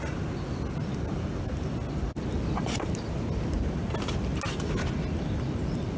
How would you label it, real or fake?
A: real